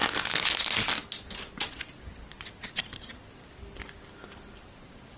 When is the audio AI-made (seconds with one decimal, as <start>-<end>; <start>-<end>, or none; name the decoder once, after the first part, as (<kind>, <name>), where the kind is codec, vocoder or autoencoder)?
none